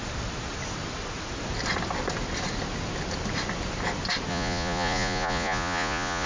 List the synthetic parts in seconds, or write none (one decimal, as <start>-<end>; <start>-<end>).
4.3-6.3